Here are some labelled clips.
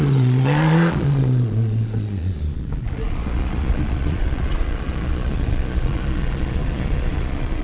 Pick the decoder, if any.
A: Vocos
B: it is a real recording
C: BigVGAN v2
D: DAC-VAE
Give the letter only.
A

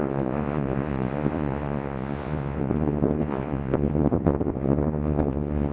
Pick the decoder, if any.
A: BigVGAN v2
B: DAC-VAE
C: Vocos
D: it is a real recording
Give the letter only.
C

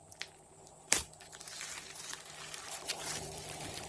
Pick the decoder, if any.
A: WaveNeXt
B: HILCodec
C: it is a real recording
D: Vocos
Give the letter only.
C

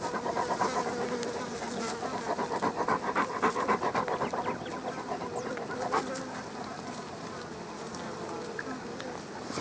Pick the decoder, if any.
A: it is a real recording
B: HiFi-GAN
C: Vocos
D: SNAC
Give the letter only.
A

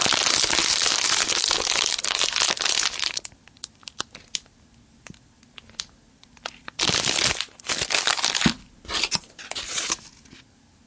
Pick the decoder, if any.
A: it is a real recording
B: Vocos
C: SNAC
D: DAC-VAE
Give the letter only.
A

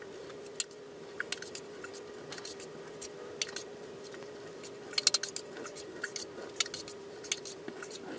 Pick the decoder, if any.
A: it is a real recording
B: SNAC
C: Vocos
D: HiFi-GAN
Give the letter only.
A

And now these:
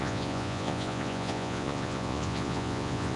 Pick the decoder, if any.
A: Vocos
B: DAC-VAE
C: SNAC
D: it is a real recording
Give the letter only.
A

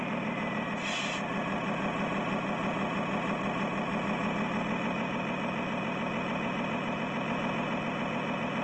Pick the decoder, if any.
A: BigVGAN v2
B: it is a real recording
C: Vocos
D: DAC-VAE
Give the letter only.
B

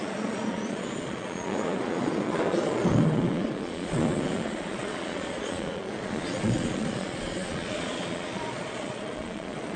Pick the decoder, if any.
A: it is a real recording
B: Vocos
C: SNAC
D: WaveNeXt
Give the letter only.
B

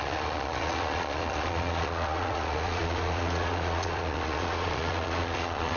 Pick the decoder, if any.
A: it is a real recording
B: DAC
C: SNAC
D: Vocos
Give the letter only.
D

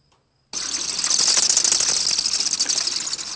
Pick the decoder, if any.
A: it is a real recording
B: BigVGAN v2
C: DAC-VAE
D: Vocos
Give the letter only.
A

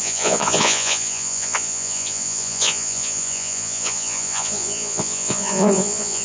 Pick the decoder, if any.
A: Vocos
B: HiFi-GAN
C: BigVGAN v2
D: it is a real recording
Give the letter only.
A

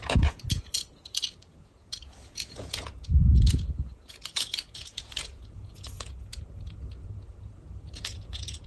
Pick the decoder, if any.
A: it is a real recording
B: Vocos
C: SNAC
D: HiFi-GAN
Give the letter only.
B